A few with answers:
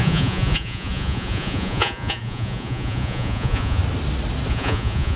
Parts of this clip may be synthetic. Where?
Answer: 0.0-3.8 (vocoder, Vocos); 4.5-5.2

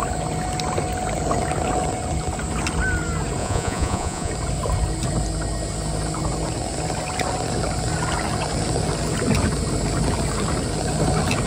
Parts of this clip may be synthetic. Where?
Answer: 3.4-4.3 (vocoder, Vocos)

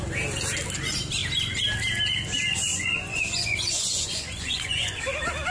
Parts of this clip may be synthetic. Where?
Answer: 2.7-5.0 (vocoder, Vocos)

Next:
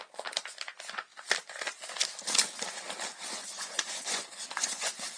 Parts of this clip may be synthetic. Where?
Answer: 3.4-5.2 (vocoder, Vocos)